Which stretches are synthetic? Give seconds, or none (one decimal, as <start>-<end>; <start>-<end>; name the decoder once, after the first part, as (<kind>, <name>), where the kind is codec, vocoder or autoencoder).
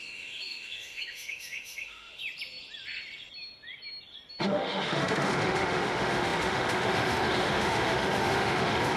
0.0-2.2 (autoencoder, DAC-VAE); 4.4-9.0